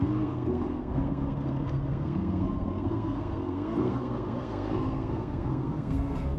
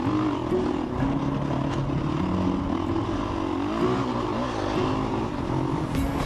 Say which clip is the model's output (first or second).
first